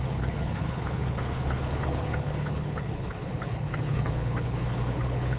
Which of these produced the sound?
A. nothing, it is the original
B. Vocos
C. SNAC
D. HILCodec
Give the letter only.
D